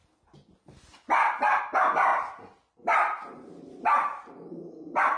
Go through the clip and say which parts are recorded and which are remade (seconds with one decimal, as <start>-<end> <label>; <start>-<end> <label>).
0.0-2.1 recorded; 2.1-5.2 remade